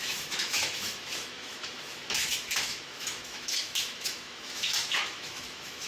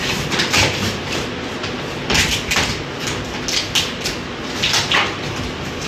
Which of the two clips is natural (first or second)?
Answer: second